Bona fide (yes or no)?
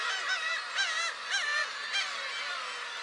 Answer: yes